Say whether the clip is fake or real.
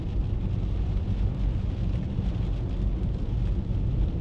real